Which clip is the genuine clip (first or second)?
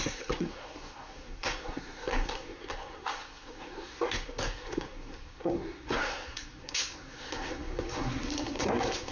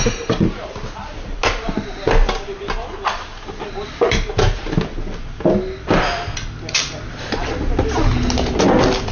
second